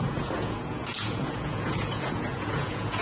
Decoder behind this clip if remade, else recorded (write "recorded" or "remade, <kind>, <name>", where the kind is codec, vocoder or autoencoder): remade, vocoder, Vocos